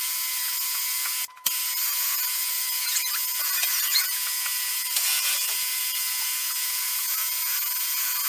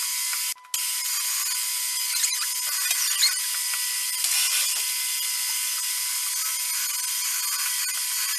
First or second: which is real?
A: second